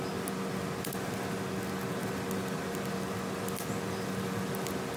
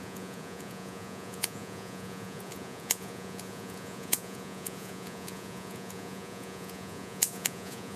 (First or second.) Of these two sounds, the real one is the first